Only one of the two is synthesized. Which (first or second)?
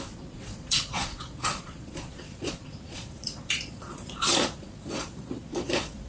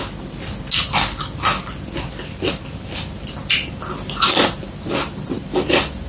first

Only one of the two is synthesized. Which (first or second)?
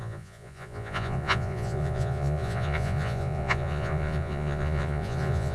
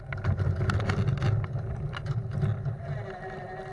first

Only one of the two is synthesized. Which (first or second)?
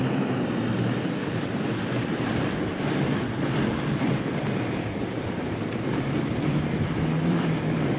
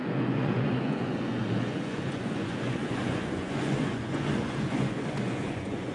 second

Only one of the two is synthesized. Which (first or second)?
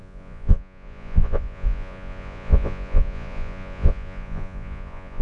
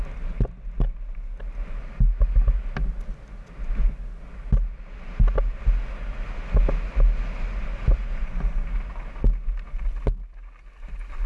first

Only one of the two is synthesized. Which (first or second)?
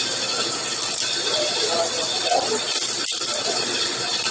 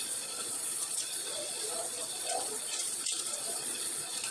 second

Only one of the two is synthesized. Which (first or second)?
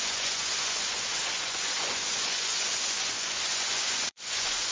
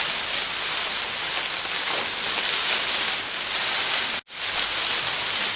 first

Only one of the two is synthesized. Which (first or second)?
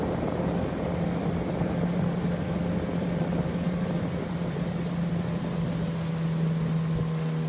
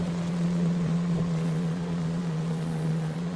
second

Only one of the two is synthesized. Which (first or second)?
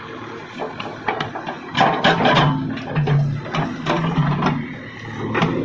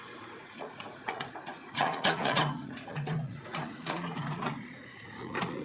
second